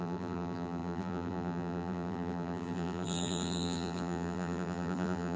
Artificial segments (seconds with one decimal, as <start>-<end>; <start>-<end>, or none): 0.0-5.4

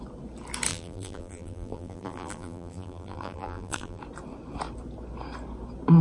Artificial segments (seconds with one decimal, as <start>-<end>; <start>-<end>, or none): 0.7-4.0